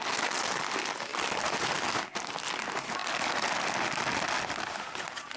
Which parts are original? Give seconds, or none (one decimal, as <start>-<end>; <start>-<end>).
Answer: 0.0-1.1; 1.7-3.0; 3.5-5.4